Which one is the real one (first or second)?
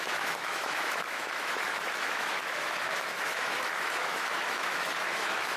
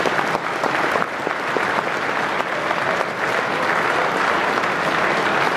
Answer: second